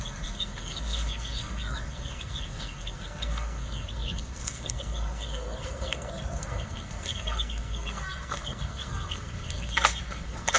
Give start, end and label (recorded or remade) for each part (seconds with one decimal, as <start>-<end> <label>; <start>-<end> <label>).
0.0-10.6 remade